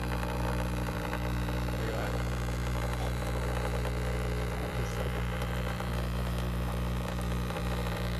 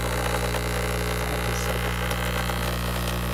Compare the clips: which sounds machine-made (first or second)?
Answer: first